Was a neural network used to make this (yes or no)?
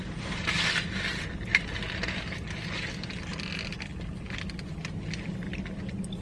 no